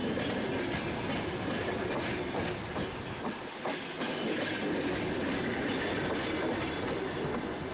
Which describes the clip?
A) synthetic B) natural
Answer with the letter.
B